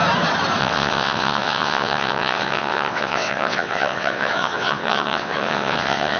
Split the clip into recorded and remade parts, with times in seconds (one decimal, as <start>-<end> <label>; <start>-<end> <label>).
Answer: 0.0-0.6 recorded; 0.6-6.2 remade